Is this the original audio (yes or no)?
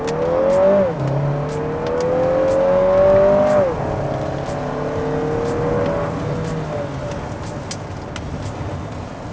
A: yes